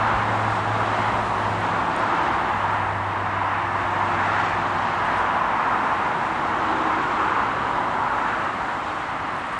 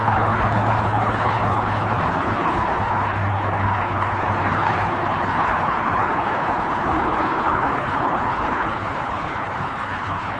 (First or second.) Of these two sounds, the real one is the first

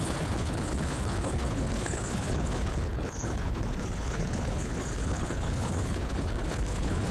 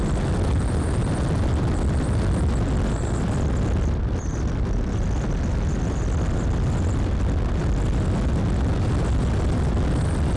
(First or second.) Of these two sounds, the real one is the second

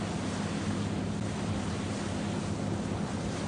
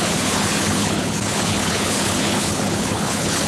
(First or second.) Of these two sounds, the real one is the first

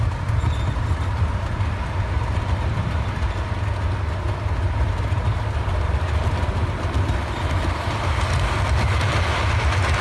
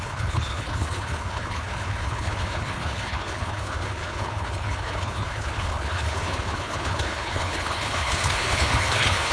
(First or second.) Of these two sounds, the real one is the first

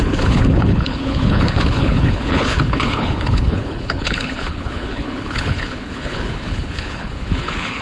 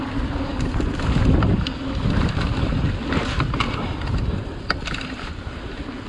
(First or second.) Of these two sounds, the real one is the second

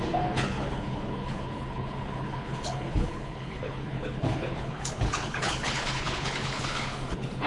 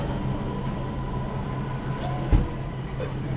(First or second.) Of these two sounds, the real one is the second